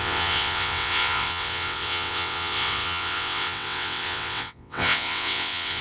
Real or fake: fake